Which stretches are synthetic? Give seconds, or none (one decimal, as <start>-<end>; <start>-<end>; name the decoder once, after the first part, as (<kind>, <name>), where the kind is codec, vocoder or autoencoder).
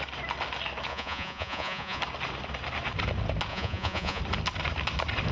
0.9-2.0 (vocoder, Vocos); 3.5-4.2